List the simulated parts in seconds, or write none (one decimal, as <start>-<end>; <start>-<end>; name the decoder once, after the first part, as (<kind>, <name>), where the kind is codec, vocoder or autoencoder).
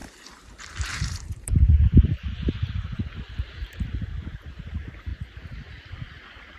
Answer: 0.0-5.1 (vocoder, BigVGAN v2)